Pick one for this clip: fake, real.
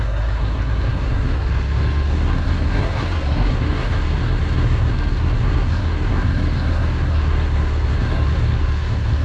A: fake